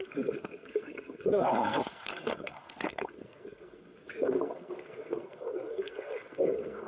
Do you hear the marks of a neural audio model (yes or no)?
yes